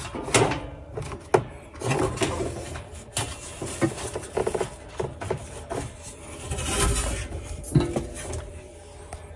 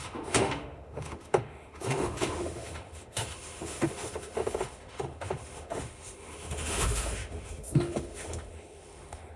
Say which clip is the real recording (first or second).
first